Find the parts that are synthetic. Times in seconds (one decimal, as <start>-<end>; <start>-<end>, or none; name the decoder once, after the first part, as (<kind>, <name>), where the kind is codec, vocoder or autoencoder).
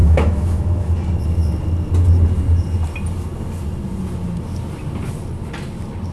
0.0-0.9 (autoencoder, DAC-VAE)